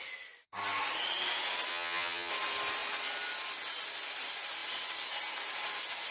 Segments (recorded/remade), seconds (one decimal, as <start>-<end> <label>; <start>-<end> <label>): 0.0-1.7 recorded; 1.7-2.3 remade; 2.3-6.1 recorded